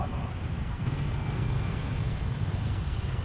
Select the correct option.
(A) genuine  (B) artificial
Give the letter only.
B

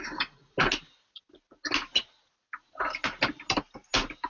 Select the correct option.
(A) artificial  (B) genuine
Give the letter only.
B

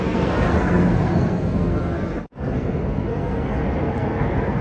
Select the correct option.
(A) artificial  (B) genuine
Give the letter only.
A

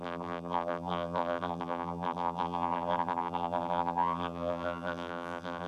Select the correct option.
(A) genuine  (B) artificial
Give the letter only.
B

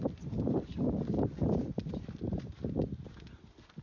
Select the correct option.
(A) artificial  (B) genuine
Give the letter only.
B